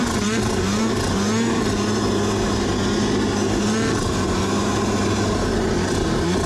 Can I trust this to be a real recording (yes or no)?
yes